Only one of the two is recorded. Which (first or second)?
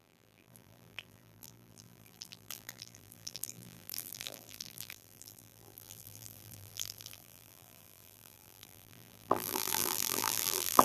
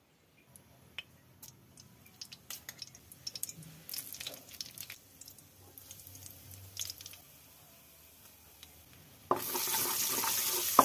second